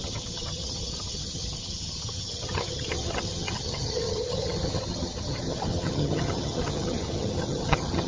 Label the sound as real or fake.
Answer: fake